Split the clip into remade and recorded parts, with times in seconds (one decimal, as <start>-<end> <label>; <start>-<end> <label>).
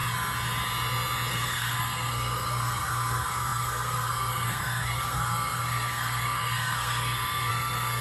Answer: 0.0-1.3 recorded; 1.3-8.0 remade